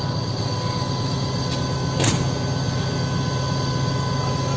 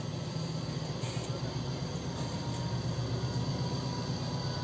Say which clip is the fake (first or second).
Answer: second